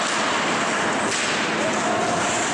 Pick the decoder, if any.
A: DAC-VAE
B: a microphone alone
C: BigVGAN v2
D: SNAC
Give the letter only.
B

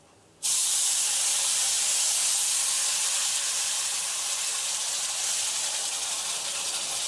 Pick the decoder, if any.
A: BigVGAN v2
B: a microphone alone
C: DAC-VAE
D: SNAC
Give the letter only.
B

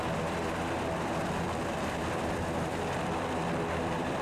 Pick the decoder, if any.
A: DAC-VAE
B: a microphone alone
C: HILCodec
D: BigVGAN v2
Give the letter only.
D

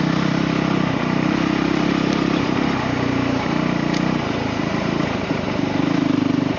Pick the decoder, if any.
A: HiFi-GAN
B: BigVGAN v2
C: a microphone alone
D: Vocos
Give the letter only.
B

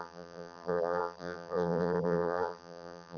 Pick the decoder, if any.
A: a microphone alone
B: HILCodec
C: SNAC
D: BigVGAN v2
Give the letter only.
D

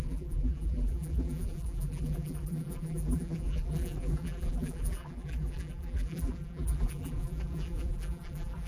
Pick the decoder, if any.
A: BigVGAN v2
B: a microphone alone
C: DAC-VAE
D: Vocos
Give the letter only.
A